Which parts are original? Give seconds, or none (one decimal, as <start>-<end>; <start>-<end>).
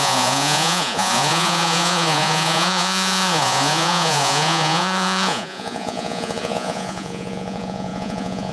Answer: none